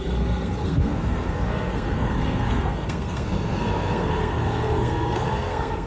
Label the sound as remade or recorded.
remade